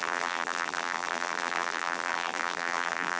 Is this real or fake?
fake